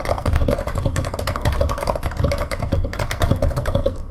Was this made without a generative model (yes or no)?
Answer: no